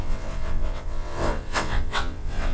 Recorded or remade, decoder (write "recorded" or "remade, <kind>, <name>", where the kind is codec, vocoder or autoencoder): remade, vocoder, WaveNeXt